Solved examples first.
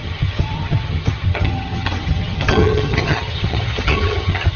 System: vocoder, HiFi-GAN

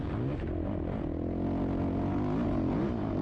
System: none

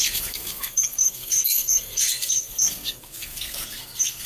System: codec, SNAC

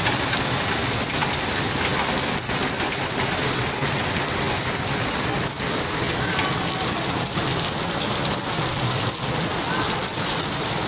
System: none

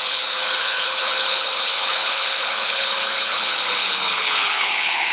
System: codec, HILCodec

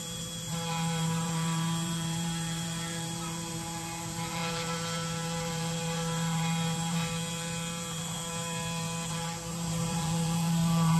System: vocoder, BigVGAN v2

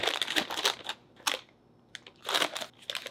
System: none